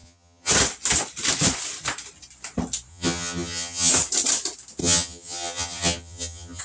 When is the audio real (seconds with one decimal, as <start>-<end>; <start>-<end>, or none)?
0.5-2.9; 3.9-4.8